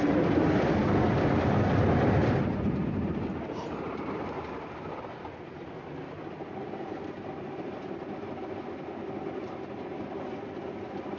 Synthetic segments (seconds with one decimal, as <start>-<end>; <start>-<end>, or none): 2.2-4.5